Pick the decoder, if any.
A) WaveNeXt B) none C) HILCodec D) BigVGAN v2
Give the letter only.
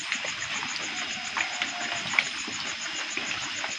B